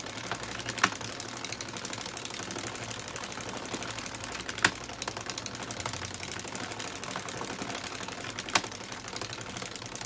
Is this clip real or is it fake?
real